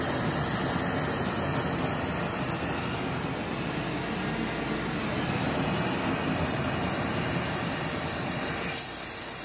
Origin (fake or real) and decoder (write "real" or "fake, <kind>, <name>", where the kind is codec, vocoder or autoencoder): real